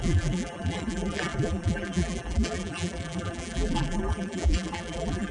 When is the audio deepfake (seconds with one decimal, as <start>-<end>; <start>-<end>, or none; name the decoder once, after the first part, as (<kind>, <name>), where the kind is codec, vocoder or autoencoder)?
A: 0.0-5.3 (vocoder, BigVGAN v2)